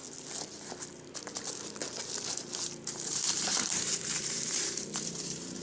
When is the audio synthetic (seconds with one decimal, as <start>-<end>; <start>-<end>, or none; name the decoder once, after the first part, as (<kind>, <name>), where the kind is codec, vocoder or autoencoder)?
2.3-5.6 (vocoder, BigVGAN v2)